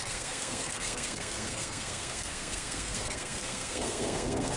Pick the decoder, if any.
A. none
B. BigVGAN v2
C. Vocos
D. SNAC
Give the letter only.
D